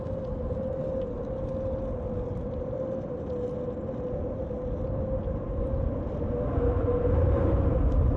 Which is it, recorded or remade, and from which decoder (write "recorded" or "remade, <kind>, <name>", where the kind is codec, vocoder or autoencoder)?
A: recorded